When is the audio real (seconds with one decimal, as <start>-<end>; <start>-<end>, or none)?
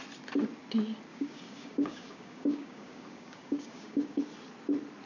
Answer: 0.0-1.1; 4.2-5.1